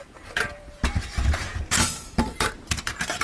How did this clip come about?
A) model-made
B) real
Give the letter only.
A